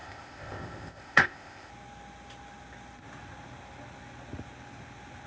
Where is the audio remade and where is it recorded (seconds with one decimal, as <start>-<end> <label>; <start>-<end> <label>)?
0.0-1.7 remade; 1.7-5.3 recorded